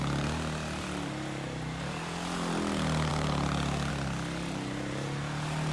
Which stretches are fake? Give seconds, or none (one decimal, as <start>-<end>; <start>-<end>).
none